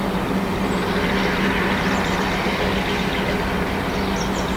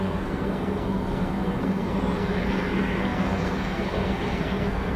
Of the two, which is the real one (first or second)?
first